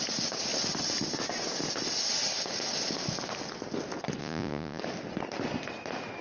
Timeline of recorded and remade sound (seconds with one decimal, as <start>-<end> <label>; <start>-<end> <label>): 0.0-4.2 recorded; 4.2-4.8 remade; 4.8-6.2 recorded